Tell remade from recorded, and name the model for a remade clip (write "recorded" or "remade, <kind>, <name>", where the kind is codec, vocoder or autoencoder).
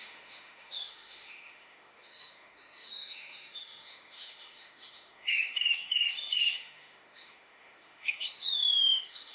remade, autoencoder, DAC-VAE